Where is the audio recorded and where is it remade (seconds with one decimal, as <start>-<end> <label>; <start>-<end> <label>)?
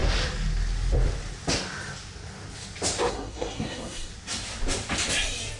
0.0-3.1 recorded; 3.1-4.1 remade; 4.1-5.6 recorded